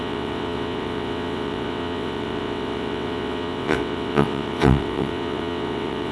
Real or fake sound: fake